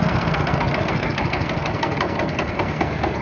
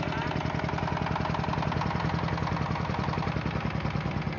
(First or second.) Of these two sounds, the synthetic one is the first